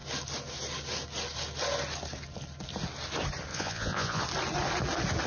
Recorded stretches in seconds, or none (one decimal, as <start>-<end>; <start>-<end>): 0.0-3.5; 4.2-5.3